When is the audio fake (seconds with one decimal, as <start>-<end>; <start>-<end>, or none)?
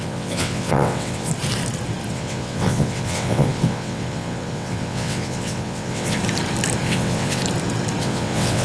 0.0-1.3; 2.1-6.2; 6.8-7.4; 8.0-8.6